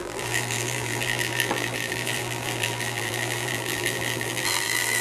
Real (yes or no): no